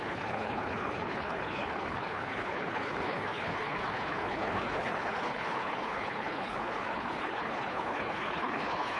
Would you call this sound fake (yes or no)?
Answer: yes